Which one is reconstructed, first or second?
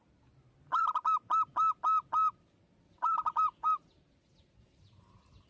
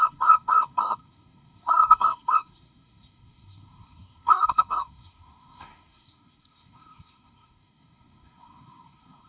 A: second